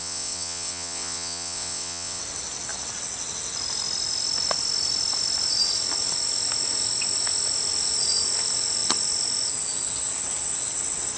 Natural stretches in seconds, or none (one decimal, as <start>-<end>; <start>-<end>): 2.2-11.2